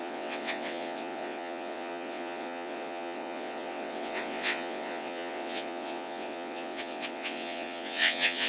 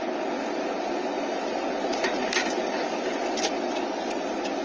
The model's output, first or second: first